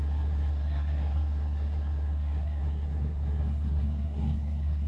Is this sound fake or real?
fake